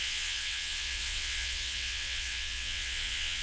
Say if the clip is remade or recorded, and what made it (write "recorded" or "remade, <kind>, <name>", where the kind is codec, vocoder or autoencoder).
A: remade, vocoder, WaveNeXt